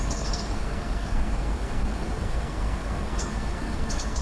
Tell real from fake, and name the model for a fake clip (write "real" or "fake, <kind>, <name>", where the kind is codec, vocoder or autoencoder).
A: fake, codec, SNAC